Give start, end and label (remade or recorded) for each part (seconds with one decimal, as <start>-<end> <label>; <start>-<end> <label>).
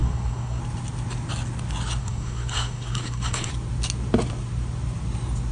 0.0-0.6 remade; 0.6-2.0 recorded; 2.0-3.5 remade; 3.5-5.5 recorded